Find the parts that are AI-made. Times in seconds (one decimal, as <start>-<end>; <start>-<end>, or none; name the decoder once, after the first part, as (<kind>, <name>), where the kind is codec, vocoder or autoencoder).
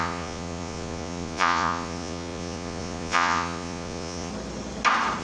0.0-4.3 (vocoder, Vocos)